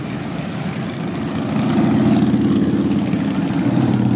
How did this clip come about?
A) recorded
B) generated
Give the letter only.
A